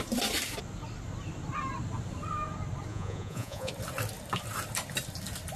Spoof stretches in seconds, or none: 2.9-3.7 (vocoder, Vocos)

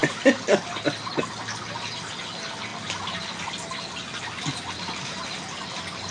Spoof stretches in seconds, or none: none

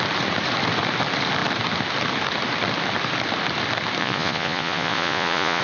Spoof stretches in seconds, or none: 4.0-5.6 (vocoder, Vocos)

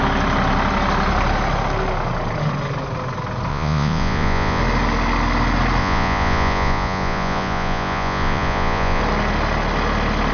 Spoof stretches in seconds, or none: 3.5-4.6 (vocoder, Vocos); 5.8-9.0